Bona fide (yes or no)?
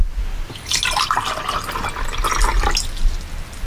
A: yes